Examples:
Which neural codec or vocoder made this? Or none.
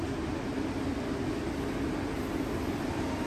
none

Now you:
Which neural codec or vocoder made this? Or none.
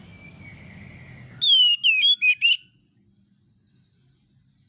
none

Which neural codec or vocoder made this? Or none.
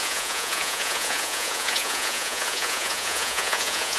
vocoder, Vocos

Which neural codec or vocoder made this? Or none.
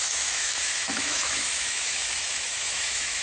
autoencoder, DAC-VAE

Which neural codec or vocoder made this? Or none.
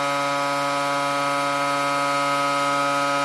none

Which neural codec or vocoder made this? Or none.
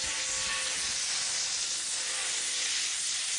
none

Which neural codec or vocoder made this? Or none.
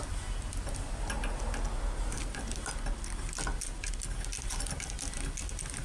none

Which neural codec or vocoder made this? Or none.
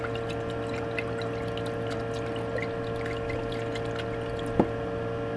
none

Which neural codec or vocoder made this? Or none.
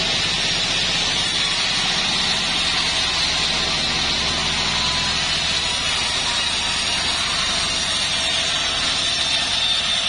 none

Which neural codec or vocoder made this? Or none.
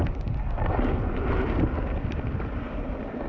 none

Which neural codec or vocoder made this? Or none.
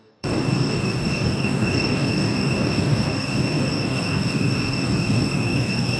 codec, DAC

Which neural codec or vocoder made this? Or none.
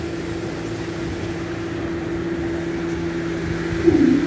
none